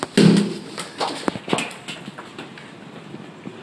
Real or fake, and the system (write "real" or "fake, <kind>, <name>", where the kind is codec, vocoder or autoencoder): real